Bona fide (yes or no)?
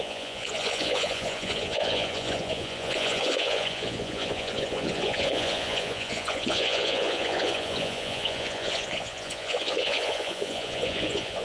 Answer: no